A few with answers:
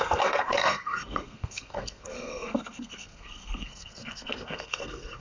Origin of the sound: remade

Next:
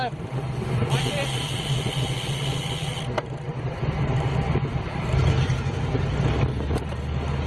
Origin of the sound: recorded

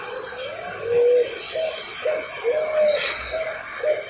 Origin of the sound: recorded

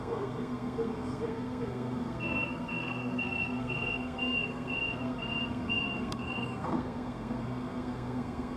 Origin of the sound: remade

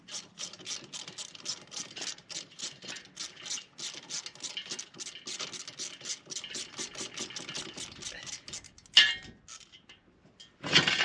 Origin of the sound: recorded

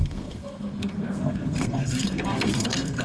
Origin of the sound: remade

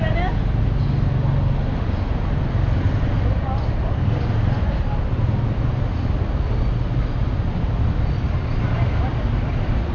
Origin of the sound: recorded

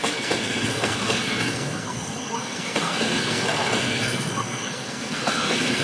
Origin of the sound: remade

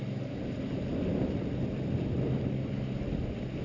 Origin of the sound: recorded